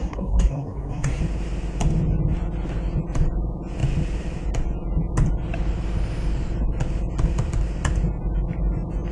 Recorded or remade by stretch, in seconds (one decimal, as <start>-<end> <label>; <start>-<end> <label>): 0.0-1.2 remade; 1.2-9.1 recorded